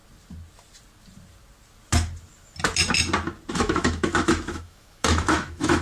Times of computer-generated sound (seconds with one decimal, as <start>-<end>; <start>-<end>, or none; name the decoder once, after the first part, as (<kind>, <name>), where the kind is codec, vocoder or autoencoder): 3.5-5.8 (autoencoder, DAC-VAE)